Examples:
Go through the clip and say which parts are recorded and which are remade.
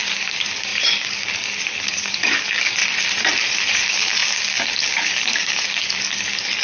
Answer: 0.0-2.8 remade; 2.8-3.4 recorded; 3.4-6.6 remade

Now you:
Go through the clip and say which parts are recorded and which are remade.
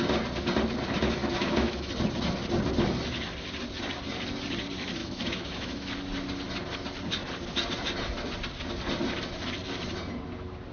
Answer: 0.0-1.2 recorded; 1.2-1.9 remade; 1.9-5.0 recorded; 5.0-5.9 remade; 5.9-10.7 recorded